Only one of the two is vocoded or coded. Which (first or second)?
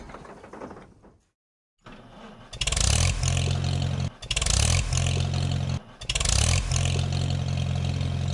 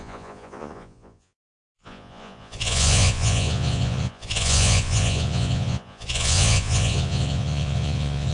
second